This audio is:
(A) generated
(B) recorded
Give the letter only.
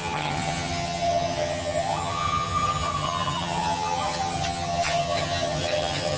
A